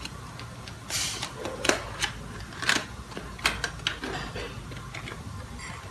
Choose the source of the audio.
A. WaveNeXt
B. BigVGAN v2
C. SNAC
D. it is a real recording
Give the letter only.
D